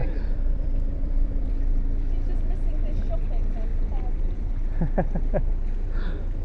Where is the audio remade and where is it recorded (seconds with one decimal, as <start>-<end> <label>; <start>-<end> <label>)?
0.0-1.5 remade; 1.5-3.7 recorded; 3.7-4.5 remade; 4.5-6.4 recorded